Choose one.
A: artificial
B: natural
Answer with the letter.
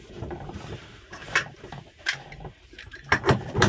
A